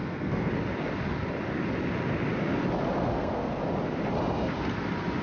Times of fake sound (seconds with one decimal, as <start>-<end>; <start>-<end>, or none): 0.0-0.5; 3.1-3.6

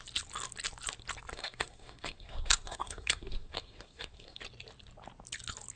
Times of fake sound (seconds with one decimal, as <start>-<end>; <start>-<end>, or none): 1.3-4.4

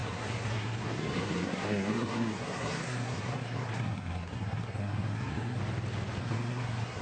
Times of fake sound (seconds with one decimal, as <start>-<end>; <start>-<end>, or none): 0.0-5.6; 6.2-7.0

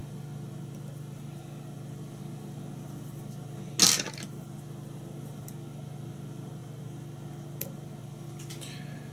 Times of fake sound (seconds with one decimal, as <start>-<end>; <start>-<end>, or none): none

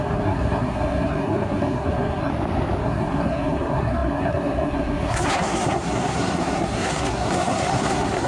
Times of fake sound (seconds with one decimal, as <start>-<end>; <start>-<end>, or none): 0.0-2.3; 2.8-8.3

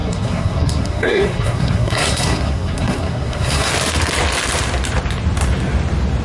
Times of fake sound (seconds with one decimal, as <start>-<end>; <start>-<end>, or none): 0.0-3.7

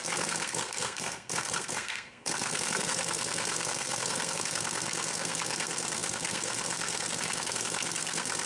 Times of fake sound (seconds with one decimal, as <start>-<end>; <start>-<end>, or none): 0.0-8.5